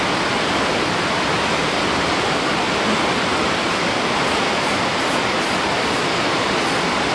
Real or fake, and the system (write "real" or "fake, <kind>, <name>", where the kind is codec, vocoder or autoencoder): real